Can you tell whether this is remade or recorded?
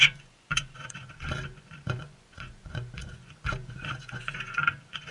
remade